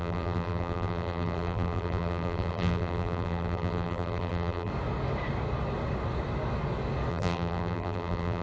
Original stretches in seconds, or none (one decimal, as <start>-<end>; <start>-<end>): 4.7-7.1